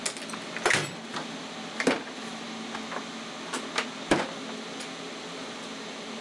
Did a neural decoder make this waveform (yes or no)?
no